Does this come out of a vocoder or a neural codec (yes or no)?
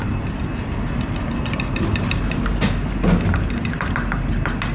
no